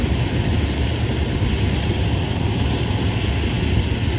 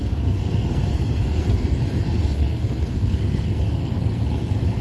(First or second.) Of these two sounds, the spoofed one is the second